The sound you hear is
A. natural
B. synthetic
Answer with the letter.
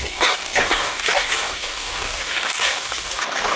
B